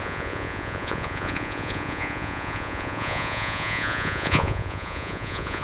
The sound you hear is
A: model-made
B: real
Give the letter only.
A